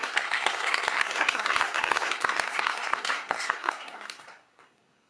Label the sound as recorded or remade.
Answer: remade